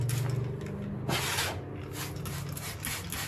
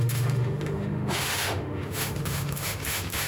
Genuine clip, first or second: first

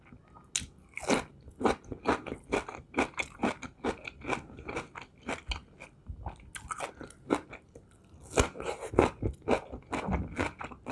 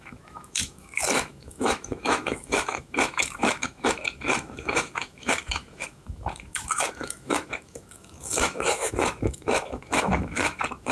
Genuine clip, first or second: first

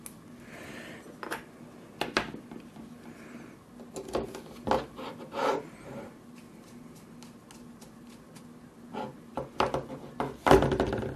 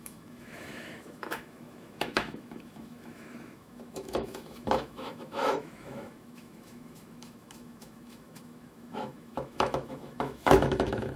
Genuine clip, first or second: first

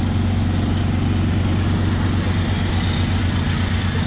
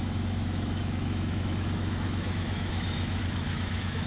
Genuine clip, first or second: first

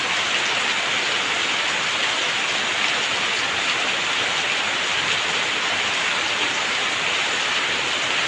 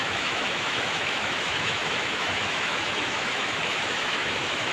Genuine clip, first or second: first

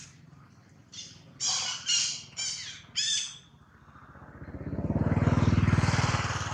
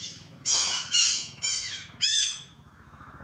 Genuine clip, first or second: first